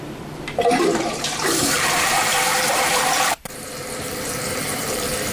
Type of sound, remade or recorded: remade